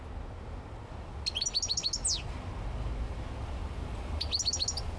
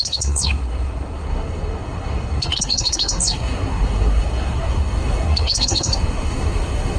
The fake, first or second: second